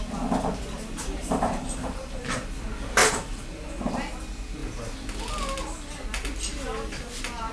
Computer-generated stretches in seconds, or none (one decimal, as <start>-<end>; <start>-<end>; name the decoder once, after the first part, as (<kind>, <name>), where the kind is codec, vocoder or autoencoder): 1.2-2.4 (vocoder, BigVGAN v2); 3.0-3.9